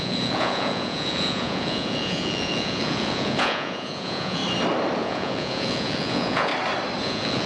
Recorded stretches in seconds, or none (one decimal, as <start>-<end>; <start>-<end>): 4.4-5.0; 6.5-7.0